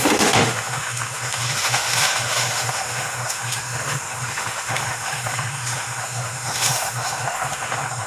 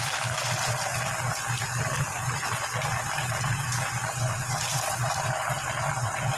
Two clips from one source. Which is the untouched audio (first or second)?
second